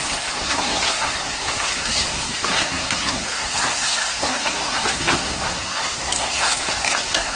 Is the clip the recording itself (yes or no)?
no